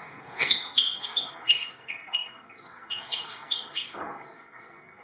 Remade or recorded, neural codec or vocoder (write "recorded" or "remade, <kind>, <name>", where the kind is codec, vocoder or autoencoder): remade, codec, SNAC